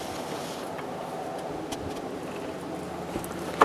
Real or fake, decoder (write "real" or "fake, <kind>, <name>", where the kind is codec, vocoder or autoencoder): real